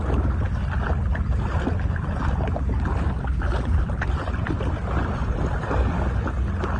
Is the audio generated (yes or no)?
no